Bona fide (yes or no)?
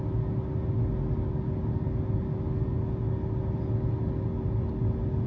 yes